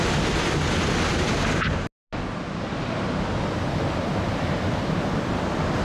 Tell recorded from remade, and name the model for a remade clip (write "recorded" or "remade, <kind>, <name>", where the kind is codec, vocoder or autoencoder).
recorded